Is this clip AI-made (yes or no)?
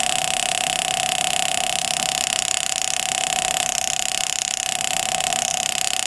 no